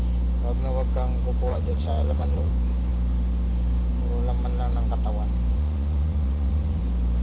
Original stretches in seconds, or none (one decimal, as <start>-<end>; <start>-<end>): 0.0-1.5; 2.5-5.5; 6.8-7.2